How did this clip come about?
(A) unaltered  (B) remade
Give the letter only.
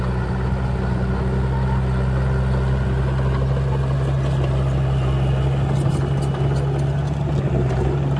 A